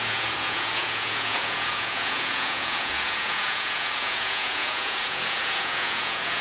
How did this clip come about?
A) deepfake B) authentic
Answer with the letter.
A